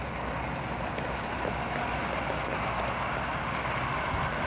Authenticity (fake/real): real